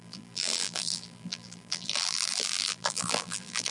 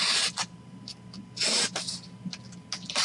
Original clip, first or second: second